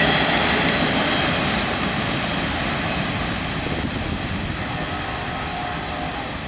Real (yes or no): yes